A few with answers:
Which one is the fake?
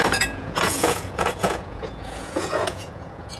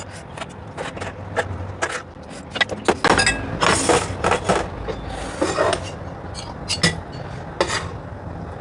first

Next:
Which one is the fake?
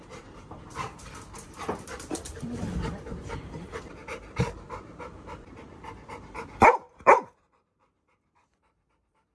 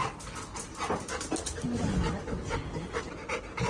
first